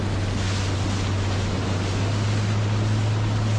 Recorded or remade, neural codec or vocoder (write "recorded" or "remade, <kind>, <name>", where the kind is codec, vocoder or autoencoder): recorded